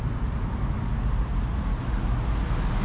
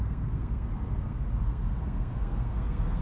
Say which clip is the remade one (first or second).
second